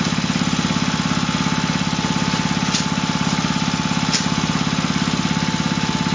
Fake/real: real